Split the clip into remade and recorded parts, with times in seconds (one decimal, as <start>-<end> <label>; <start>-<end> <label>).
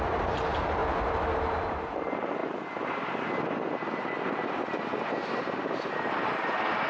0.0-6.9 recorded